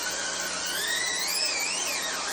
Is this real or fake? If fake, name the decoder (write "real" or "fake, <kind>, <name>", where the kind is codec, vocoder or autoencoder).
real